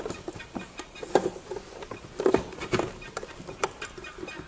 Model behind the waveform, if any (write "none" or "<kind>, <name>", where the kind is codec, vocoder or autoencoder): none